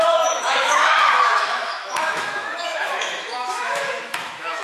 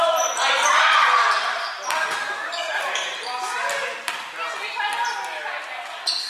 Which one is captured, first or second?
second